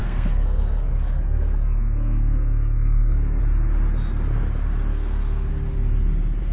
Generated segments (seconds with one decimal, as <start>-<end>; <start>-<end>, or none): 0.0-3.4; 4.9-5.5